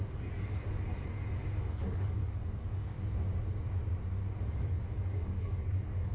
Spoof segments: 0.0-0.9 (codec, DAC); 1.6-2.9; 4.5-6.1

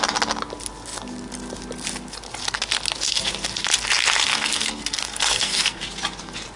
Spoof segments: 4.3-5.8 (codec, SNAC)

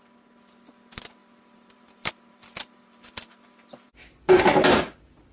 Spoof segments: 1.2-4.4 (vocoder, BigVGAN v2)

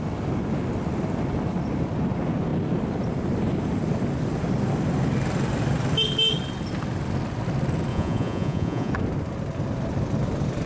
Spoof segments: 7.9-8.9 (vocoder, Vocos)

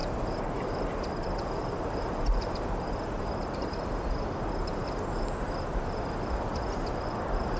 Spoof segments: 0.0-3.6 (vocoder, BigVGAN v2)

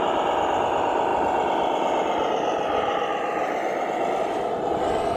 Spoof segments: none